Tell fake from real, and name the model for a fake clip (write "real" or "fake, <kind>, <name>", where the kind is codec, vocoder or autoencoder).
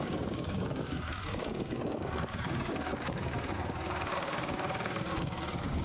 fake, codec, DAC